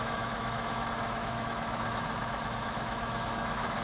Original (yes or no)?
no